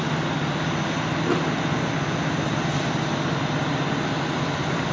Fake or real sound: real